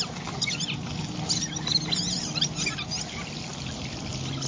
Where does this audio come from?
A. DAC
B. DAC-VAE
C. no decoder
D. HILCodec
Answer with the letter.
C